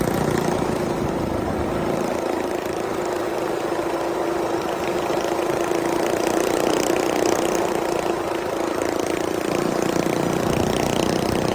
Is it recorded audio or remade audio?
recorded